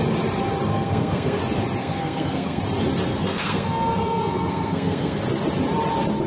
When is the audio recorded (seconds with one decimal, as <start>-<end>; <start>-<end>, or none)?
0.0-0.7; 1.4-1.8; 2.6-3.1; 5.2-6.3